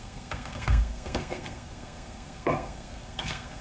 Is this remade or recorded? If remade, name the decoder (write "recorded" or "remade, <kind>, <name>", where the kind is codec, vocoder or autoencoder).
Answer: remade, codec, SNAC